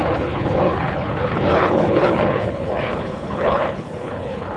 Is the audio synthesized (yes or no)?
yes